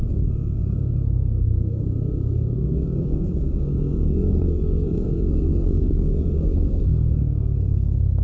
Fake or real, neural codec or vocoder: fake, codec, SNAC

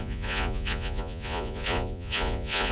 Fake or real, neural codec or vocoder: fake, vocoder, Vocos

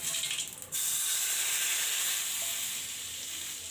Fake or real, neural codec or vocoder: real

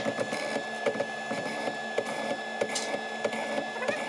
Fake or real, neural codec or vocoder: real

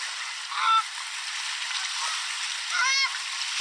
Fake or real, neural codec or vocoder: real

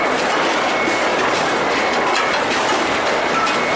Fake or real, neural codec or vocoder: real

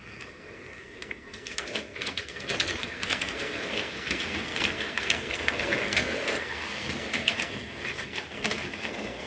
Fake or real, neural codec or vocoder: fake, codec, SNAC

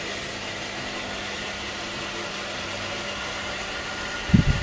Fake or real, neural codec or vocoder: fake, vocoder, BigVGAN v2